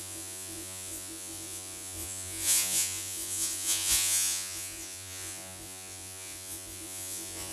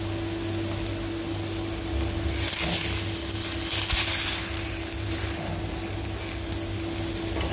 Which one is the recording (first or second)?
second